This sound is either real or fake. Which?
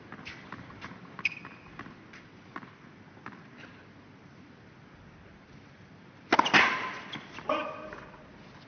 real